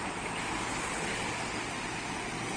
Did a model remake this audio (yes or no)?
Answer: no